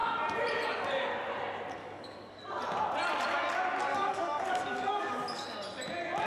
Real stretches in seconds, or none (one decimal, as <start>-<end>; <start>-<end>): 0.0-1.8; 2.4-3.9; 5.2-6.3